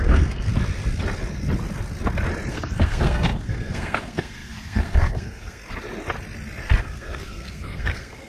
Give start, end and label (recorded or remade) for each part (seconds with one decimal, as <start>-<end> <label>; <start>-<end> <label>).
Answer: 0.0-0.5 remade; 0.5-2.5 recorded; 2.5-5.6 remade; 5.6-6.8 recorded; 6.8-8.3 remade